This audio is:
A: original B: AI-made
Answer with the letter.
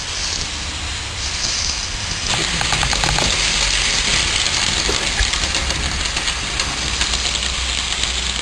A